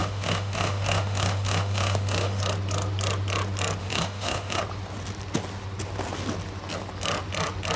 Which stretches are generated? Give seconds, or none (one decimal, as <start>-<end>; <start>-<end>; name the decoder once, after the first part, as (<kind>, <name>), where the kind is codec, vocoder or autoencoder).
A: 0.0-2.4 (autoencoder, DAC-VAE); 3.8-4.6